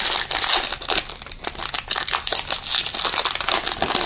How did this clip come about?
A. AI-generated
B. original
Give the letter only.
B